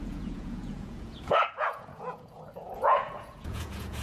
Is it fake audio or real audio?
fake